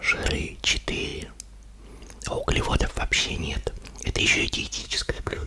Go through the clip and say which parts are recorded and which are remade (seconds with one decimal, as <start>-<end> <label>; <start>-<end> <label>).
0.0-4.8 recorded; 4.8-5.5 remade

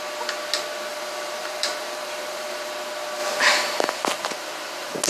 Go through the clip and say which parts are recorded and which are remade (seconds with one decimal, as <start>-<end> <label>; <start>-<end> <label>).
0.0-0.9 recorded; 0.9-2.7 remade; 2.7-5.1 recorded

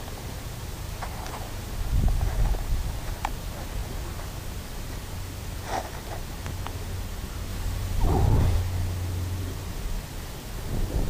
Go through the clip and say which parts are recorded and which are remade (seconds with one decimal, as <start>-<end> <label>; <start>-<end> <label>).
0.0-7.5 recorded; 7.5-8.6 remade; 8.6-11.1 recorded

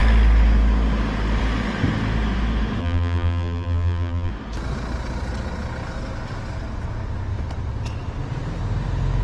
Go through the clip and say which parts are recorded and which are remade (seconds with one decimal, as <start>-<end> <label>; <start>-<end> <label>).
0.0-2.8 recorded; 2.8-4.3 remade; 4.3-9.2 recorded

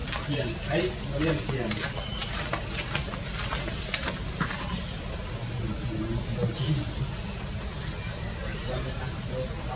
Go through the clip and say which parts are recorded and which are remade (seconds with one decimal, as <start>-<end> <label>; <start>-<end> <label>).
0.0-0.9 remade; 0.9-8.5 recorded; 8.5-9.3 remade; 9.3-9.8 recorded